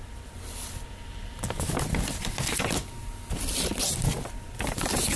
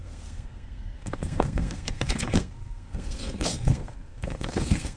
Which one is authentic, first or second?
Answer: first